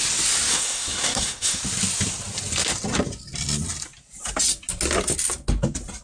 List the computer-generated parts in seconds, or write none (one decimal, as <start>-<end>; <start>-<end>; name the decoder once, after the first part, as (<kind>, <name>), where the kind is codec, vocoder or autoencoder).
0.5-1.6 (codec, SNAC)